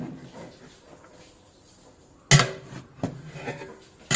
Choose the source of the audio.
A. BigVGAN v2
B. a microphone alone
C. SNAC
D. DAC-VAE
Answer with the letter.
B